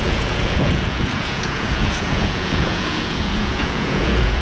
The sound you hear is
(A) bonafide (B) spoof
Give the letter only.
B